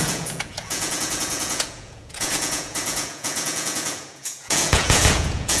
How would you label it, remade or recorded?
remade